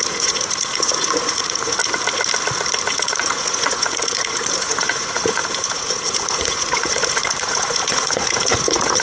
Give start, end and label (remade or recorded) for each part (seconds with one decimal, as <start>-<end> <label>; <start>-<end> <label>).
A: 0.0-1.8 remade; 1.8-2.9 recorded; 2.9-9.0 remade